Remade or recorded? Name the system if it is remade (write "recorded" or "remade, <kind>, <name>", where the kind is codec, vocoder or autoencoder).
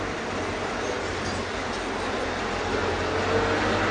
recorded